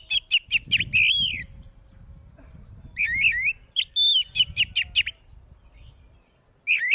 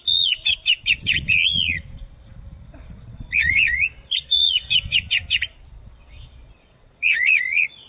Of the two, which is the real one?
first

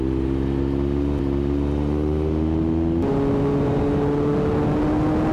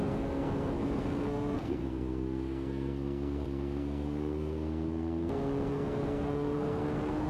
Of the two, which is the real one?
first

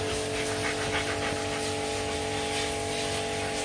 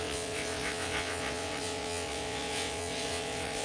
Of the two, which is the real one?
first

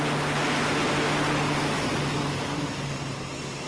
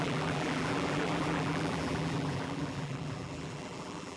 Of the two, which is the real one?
first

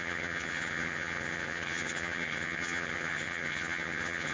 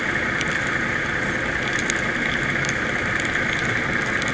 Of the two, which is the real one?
second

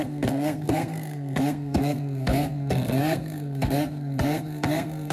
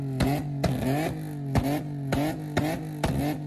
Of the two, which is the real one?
second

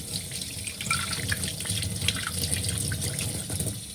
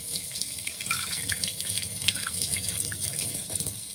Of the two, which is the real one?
first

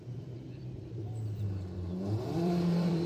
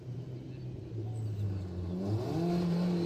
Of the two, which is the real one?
second